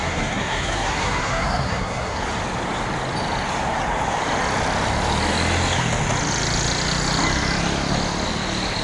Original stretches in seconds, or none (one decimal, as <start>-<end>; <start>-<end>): 2.2-8.8

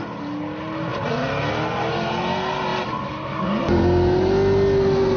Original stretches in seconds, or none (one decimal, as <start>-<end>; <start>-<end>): 0.0-5.2

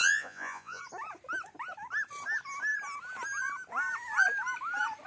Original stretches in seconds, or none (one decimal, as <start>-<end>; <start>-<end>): 0.8-5.1

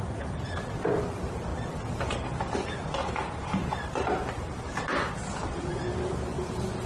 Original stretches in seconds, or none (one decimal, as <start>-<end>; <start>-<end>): 0.0-6.9

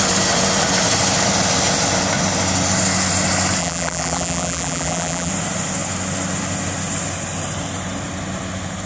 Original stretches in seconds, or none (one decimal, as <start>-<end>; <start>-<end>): 0.0-3.6; 5.3-8.9

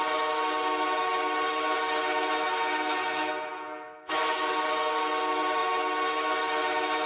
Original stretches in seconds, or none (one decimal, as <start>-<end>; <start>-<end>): 0.0-7.1

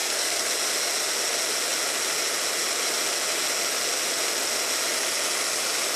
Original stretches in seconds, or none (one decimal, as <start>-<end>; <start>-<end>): 0.5-6.0

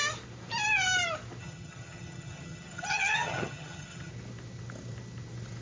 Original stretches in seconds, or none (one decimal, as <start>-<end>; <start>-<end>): 0.0-1.4; 4.1-5.6